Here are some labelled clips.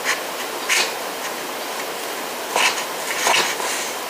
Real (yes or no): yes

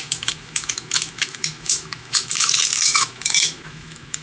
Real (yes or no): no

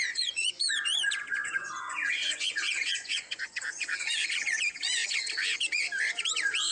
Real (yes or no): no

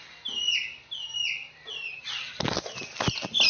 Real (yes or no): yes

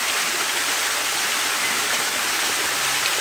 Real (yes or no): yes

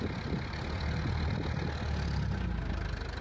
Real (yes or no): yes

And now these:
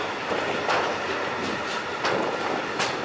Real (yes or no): yes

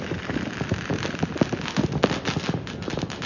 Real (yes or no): yes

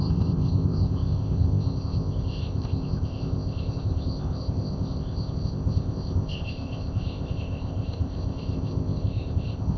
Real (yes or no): no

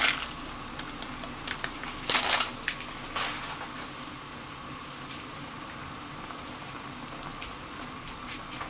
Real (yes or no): yes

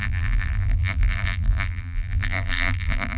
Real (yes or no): no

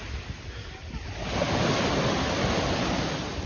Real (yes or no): yes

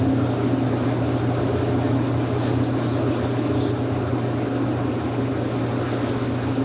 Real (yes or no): yes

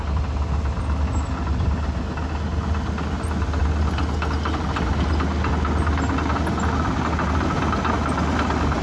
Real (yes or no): yes